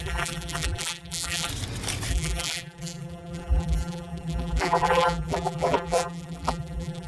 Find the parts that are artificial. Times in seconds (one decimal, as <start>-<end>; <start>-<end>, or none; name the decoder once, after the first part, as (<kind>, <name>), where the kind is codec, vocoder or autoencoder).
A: 0.0-1.5 (vocoder, BigVGAN v2); 2.1-7.1